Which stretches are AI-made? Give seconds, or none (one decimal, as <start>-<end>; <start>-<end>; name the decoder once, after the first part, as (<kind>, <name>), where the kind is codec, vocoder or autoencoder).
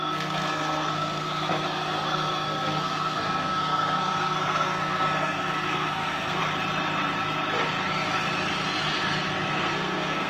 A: 0.0-6.4 (codec, SNAC); 9.5-10.3